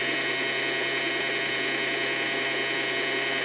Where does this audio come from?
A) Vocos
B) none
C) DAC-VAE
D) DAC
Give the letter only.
B